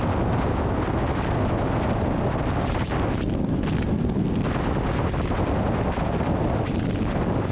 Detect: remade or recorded recorded